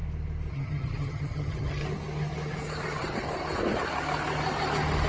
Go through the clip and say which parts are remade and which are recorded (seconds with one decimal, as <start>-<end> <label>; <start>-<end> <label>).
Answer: 0.0-0.5 recorded; 0.5-1.8 remade; 1.8-5.1 recorded